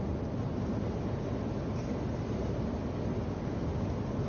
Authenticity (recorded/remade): recorded